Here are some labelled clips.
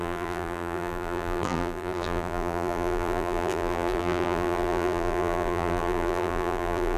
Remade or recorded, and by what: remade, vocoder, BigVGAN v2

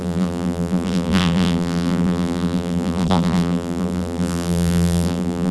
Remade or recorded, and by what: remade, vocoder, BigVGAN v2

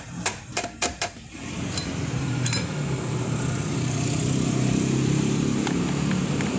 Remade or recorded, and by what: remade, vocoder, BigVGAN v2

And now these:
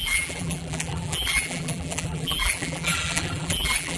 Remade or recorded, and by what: remade, vocoder, BigVGAN v2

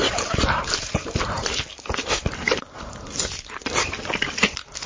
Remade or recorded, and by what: remade, vocoder, BigVGAN v2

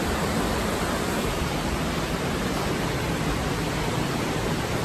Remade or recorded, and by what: recorded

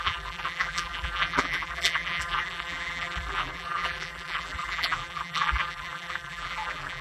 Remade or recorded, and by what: remade, vocoder, BigVGAN v2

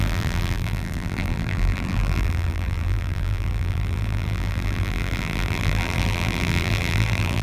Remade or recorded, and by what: remade, vocoder, BigVGAN v2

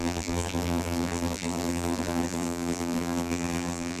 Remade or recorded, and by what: remade, vocoder, BigVGAN v2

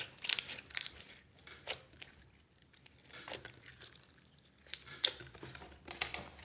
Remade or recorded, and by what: remade, vocoder, BigVGAN v2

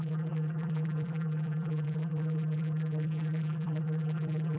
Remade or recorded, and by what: remade, vocoder, BigVGAN v2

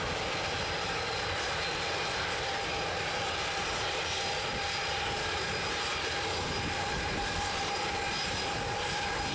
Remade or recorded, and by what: remade, vocoder, BigVGAN v2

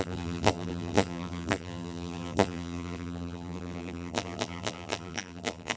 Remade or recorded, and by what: remade, vocoder, BigVGAN v2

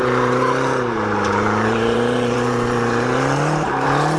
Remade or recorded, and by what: remade, vocoder, BigVGAN v2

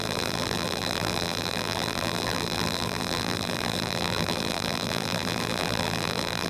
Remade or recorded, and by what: remade, vocoder, BigVGAN v2